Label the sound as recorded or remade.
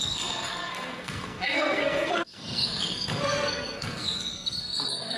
remade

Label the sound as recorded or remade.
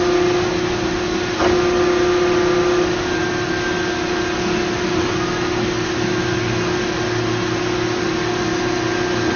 recorded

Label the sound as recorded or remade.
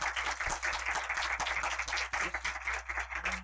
recorded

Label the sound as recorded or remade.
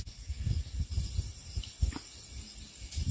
recorded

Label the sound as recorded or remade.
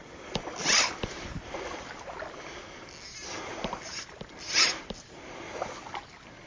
recorded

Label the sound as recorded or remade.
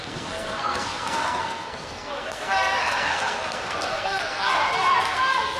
remade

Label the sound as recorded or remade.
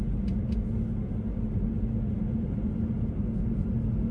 recorded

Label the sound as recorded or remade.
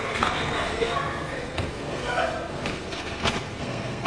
remade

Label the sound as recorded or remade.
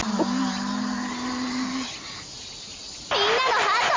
recorded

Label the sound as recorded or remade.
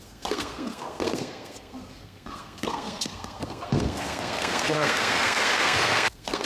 remade